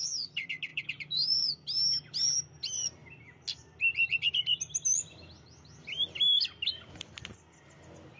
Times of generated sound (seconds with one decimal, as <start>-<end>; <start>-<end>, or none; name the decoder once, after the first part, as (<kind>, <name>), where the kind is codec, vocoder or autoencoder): 0.7-1.5 (vocoder, BigVGAN v2)